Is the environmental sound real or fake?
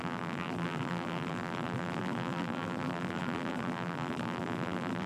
fake